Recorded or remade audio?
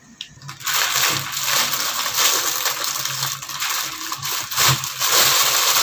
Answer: recorded